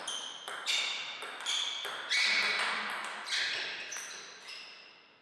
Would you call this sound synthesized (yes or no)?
no